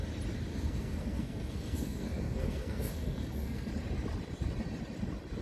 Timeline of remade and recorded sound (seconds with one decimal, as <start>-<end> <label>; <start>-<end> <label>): 0.0-0.5 recorded; 0.5-3.7 remade; 3.7-5.4 recorded